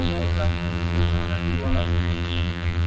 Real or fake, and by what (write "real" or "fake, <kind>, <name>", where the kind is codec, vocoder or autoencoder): fake, vocoder, BigVGAN v2